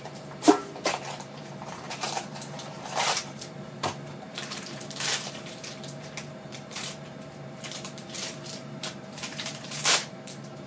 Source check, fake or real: fake